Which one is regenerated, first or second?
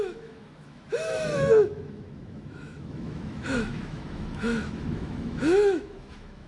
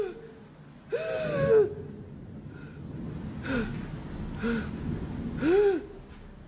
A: first